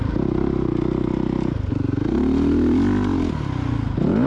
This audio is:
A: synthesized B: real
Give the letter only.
B